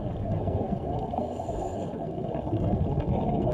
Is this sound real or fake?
fake